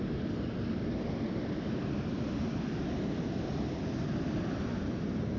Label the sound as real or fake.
real